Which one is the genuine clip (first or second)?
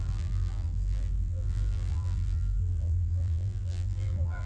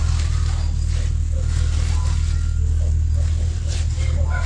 second